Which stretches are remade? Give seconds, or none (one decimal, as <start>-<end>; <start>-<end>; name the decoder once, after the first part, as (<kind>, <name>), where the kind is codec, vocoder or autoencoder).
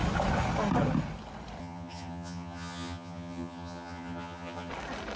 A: 1.6-4.7 (vocoder, HiFi-GAN)